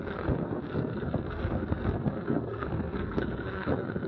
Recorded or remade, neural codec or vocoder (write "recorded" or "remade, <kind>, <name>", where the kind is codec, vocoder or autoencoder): remade, codec, SNAC